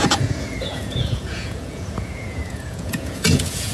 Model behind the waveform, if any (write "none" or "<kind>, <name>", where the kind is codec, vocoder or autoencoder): vocoder, Vocos